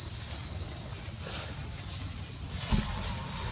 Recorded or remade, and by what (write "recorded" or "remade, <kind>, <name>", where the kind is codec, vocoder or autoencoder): recorded